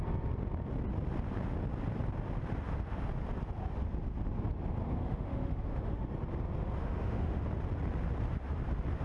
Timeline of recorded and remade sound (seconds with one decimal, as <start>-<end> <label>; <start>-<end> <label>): 0.0-5.0 recorded; 5.0-6.1 remade; 6.1-6.8 recorded; 6.8-7.4 remade; 7.4-9.0 recorded